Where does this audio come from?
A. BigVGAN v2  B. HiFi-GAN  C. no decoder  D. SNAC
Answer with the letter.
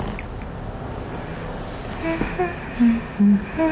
C